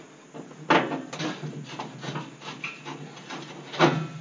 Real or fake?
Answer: real